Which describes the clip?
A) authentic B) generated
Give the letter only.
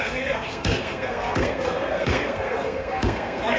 B